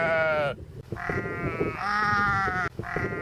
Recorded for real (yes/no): yes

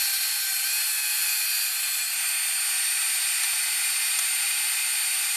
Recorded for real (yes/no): yes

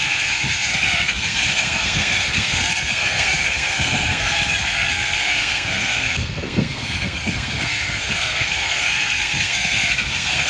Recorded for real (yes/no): no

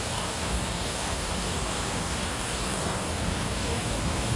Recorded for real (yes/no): no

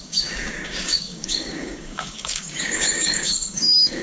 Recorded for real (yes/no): no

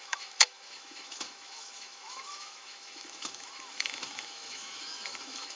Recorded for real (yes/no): no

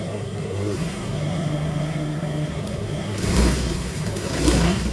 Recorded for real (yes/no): no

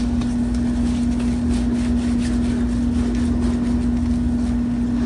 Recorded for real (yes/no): yes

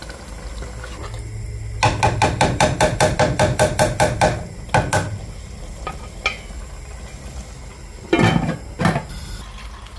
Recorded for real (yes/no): yes